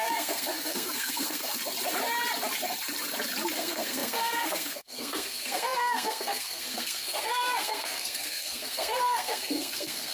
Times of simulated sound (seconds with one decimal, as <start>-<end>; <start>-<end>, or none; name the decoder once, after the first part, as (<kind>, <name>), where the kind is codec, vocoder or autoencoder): 0.0-1.6 (codec, SNAC); 3.5-10.1